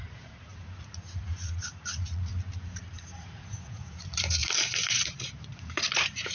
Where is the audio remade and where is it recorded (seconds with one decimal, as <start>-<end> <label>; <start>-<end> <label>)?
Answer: 0.0-2.3 remade; 2.3-3.2 recorded; 3.2-4.4 remade; 4.4-4.9 recorded; 4.9-6.3 remade